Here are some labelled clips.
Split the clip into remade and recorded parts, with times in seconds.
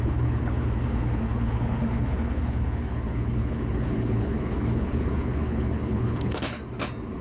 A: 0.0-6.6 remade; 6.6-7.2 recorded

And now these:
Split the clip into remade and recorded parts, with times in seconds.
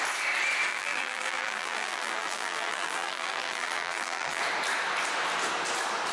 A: 0.0-0.7 recorded; 0.7-4.4 remade; 4.4-6.1 recorded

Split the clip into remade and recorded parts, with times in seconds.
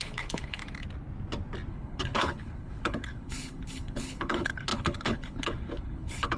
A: 0.0-0.6 remade; 0.6-1.7 recorded; 1.7-6.4 remade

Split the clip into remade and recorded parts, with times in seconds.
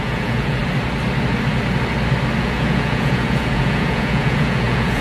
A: 0.0-0.6 remade; 0.6-2.4 recorded; 2.4-5.0 remade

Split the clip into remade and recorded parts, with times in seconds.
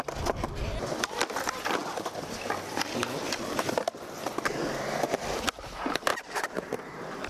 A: 0.0-6.1 recorded; 6.1-7.3 remade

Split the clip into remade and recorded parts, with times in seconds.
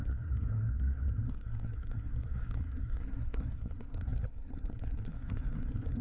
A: 0.0-6.0 remade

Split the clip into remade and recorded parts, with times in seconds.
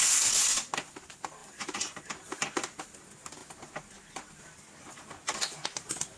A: 0.0-6.2 recorded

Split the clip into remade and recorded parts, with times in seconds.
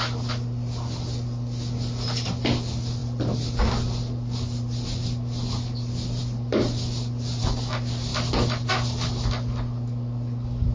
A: 0.0-10.7 recorded